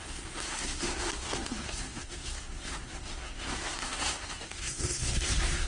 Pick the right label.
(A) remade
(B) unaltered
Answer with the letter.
A